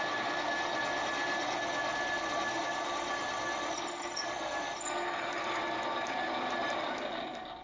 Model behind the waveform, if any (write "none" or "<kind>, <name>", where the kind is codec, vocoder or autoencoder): none